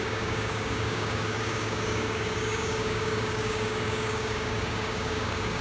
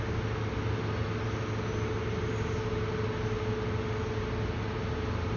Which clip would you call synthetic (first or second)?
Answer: first